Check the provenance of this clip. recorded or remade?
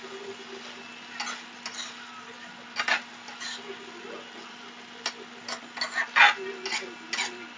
recorded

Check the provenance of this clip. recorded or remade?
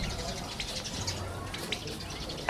recorded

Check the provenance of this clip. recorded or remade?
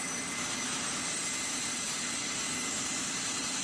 recorded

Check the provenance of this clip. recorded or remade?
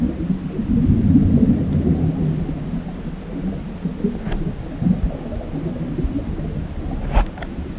recorded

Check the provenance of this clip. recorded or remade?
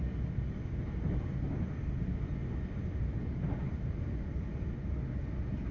recorded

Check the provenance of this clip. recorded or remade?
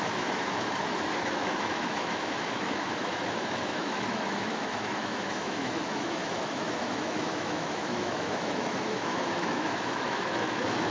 remade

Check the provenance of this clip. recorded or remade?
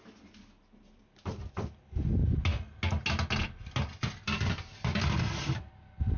recorded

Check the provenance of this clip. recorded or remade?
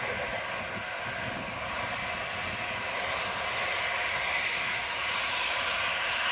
recorded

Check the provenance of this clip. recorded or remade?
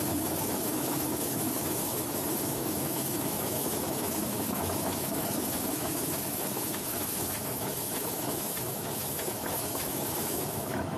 remade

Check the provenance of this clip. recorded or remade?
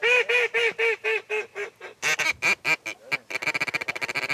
recorded